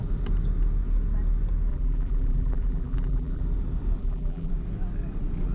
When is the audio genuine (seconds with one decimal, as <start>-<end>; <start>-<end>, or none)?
0.0-1.7; 3.4-4.0; 4.5-5.5